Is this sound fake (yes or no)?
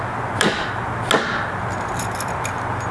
no